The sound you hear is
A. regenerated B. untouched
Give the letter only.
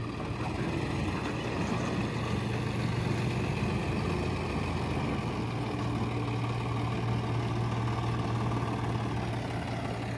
B